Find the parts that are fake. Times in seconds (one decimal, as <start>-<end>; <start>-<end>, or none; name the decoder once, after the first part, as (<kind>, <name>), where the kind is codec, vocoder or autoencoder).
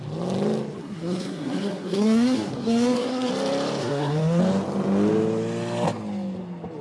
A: 0.8-3.3 (codec, SNAC); 3.8-4.4